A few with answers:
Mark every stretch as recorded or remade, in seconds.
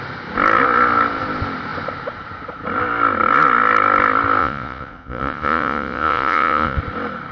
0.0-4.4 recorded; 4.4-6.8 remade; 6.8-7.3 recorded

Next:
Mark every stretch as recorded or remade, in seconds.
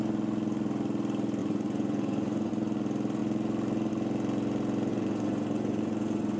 0.0-1.4 recorded; 1.4-2.5 remade; 2.5-4.9 recorded; 4.9-6.4 remade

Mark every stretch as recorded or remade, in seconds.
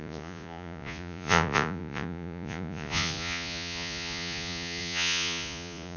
0.0-6.0 remade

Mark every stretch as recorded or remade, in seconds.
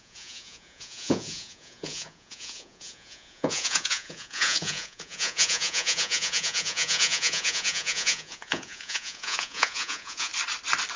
0.0-10.3 remade; 10.3-11.0 recorded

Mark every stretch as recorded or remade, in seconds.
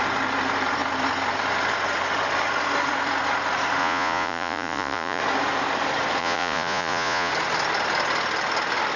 0.0-3.8 recorded; 3.8-5.2 remade; 5.2-6.2 recorded; 6.2-7.3 remade; 7.3-9.0 recorded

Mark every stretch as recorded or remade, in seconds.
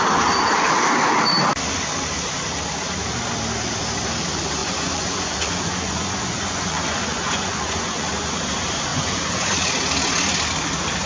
0.0-4.6 recorded; 4.6-8.3 remade; 8.3-8.9 recorded; 8.9-9.7 remade; 9.7-11.1 recorded